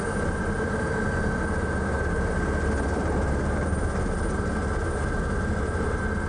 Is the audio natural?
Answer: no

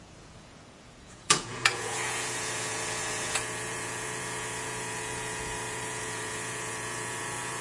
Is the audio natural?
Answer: no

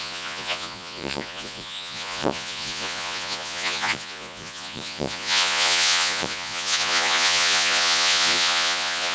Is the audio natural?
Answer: no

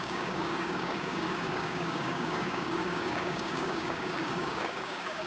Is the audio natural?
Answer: no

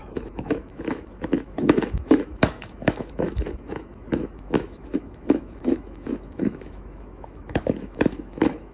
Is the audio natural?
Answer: no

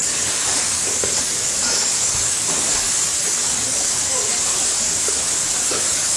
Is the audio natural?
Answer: no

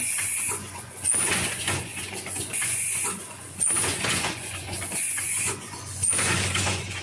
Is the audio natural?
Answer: no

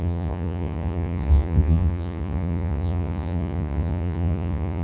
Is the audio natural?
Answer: no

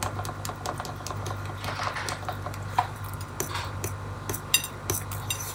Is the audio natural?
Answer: yes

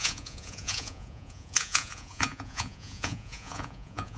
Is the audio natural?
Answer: no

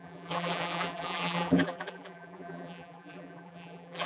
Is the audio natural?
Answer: no